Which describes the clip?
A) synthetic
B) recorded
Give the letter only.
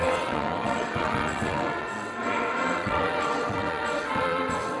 A